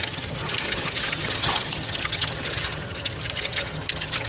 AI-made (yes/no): yes